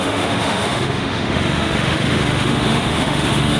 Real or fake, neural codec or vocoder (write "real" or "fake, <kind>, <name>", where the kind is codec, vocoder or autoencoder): fake, autoencoder, DAC-VAE